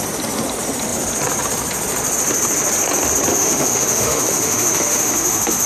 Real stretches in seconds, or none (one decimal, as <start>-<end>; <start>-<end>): 0.0-3.3